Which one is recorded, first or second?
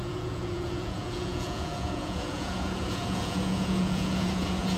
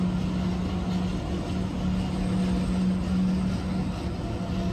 second